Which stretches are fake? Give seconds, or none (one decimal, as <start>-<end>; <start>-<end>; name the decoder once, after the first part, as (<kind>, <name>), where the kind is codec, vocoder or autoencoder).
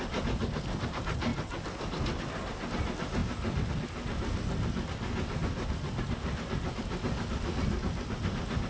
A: none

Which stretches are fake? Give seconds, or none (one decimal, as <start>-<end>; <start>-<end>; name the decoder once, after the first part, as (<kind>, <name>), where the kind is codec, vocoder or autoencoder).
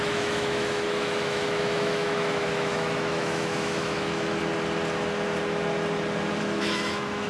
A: 0.0-4.4 (autoencoder, DAC-VAE); 6.4-7.3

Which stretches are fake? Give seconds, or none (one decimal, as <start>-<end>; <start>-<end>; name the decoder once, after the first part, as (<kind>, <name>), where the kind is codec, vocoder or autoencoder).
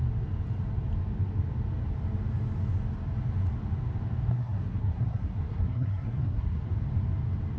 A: 4.3-6.6 (codec, SNAC)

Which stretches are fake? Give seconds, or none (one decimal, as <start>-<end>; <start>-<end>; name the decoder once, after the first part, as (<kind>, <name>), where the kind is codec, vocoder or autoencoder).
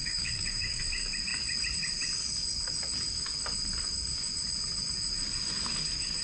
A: 0.0-0.8 (codec, DAC)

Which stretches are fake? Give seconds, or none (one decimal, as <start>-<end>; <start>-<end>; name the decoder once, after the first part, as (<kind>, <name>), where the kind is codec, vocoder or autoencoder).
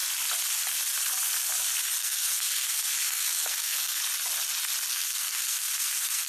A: 2.0-4.0 (codec, SNAC); 4.9-6.3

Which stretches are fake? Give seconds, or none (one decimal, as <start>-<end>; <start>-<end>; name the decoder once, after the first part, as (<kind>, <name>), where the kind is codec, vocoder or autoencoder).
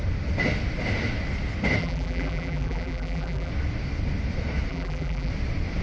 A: 1.8-3.5 (vocoder, BigVGAN v2); 4.7-5.3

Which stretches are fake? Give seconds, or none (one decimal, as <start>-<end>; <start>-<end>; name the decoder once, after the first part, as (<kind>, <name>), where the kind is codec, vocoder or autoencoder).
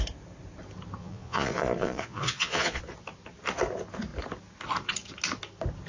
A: 1.0-2.8 (vocoder, Vocos)